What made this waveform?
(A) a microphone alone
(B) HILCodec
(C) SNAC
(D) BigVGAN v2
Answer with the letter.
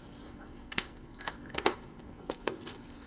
C